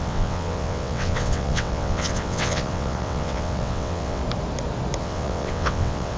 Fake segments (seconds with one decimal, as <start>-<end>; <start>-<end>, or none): 0.0-4.2; 5.0-6.2